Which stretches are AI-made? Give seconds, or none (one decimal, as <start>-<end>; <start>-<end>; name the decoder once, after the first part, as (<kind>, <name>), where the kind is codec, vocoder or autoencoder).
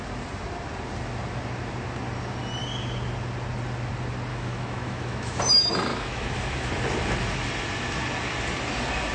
4.3-5.4 (autoencoder, DAC-VAE); 5.9-6.7